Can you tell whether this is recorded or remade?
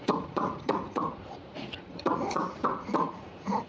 remade